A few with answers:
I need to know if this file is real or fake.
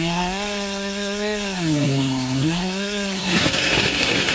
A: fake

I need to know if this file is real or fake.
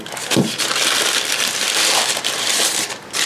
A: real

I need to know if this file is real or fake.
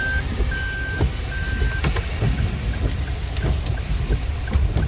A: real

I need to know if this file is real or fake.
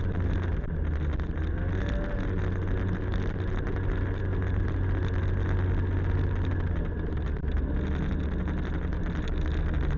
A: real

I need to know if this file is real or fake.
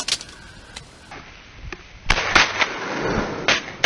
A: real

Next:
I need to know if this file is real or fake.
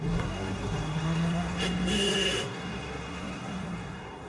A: fake